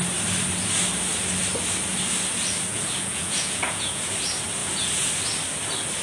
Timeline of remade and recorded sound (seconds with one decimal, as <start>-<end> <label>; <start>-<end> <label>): 0.0-2.7 recorded; 2.7-4.1 remade; 4.1-4.6 recorded; 4.6-5.1 remade; 5.1-6.0 recorded